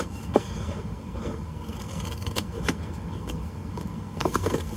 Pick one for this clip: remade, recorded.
remade